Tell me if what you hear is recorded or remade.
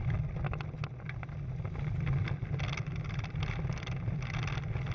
recorded